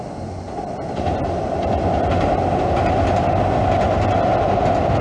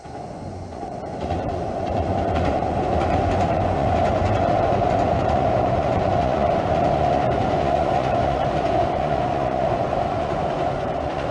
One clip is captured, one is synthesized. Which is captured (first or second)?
first